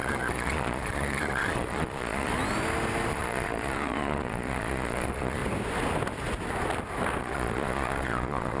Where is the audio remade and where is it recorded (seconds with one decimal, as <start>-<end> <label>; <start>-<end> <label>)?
0.0-2.3 remade; 2.3-3.1 recorded; 3.1-5.4 remade; 5.4-7.2 recorded; 7.2-8.6 remade